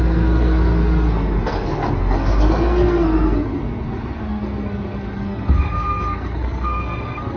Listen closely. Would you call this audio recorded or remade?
remade